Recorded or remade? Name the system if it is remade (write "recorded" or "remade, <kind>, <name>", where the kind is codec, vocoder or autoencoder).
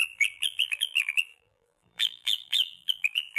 remade, vocoder, BigVGAN v2